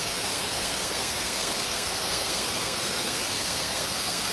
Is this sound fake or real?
fake